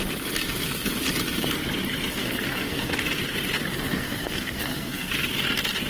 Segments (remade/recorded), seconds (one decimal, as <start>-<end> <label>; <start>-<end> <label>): 0.0-2.1 recorded; 2.1-2.9 remade; 2.9-3.7 recorded; 3.7-5.1 remade; 5.1-5.9 recorded